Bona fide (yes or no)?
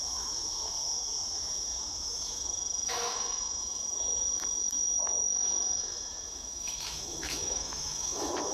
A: no